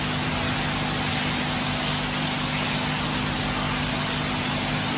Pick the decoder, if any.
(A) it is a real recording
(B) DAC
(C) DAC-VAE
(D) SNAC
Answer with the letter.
A